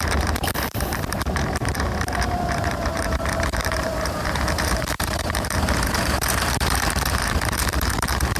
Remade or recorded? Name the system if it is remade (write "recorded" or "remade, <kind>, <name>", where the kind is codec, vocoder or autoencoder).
remade, vocoder, BigVGAN v2